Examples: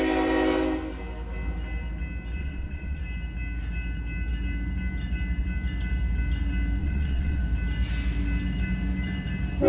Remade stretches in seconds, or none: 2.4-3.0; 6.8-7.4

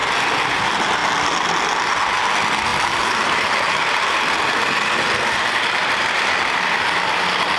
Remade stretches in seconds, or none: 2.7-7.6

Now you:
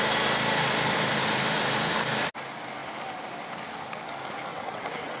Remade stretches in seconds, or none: 4.5-5.2

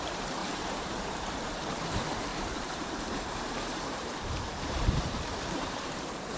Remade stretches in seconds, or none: 0.0-6.4